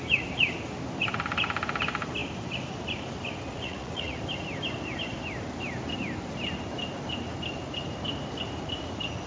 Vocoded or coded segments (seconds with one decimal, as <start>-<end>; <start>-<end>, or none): 3.5-4.2